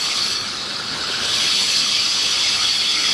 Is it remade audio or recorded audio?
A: remade